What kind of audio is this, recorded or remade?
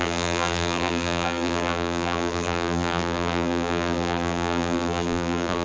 remade